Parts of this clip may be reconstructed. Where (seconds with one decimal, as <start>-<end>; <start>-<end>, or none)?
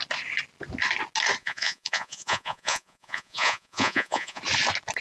1.4-4.4